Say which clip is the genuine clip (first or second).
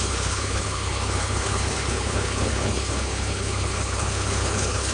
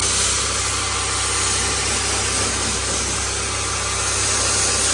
second